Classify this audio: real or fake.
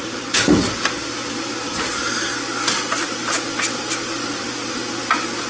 real